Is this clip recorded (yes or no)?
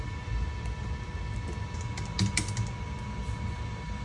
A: yes